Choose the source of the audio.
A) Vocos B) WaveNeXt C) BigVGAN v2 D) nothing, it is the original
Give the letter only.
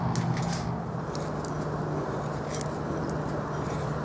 D